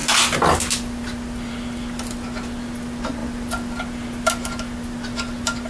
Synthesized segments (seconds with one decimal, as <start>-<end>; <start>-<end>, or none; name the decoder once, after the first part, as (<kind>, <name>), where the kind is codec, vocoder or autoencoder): none